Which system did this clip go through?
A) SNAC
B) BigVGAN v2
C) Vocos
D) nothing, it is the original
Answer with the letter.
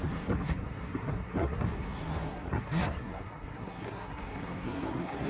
A